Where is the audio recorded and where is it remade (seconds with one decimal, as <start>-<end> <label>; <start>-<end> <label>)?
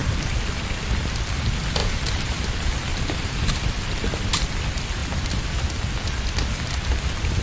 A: 0.0-1.8 recorded; 1.8-2.4 remade; 2.4-2.9 recorded; 2.9-4.0 remade; 4.0-7.4 recorded